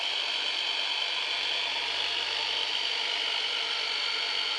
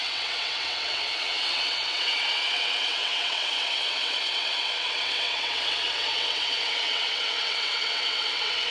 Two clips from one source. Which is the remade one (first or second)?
second